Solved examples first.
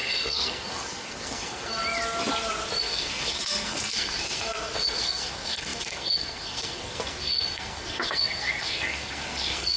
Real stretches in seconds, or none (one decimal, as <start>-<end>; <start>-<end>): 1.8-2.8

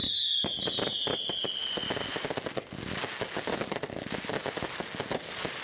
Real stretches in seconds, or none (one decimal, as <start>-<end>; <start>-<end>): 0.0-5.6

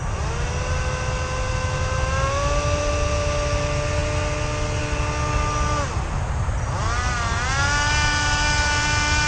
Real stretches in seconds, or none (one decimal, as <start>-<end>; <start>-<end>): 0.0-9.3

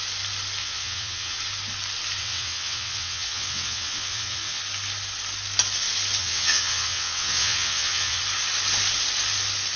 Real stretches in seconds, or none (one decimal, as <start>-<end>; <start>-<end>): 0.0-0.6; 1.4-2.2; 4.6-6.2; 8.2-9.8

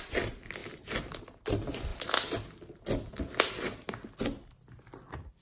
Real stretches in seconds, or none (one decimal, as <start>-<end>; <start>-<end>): 0.0-0.6; 1.2-5.4